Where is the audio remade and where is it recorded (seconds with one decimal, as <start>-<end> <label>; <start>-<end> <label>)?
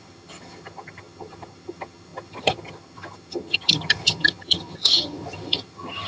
0.0-6.1 remade